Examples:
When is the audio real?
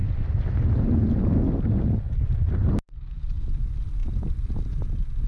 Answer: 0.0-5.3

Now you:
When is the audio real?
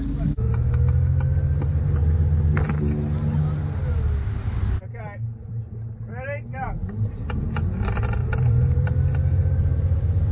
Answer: 0.0-6.8; 7.5-8.2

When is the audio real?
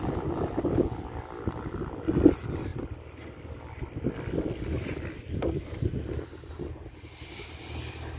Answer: 0.0-8.2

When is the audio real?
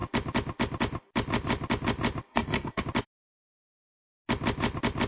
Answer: 0.0-2.3; 2.8-5.1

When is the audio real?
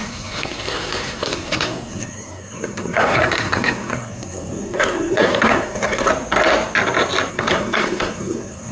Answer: 6.1-7.3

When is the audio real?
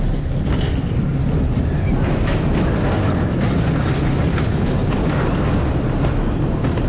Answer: 1.1-4.3; 4.8-6.5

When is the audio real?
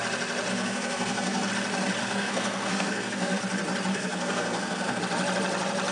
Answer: 0.0-0.5; 1.5-2.0; 3.4-3.9; 5.0-5.9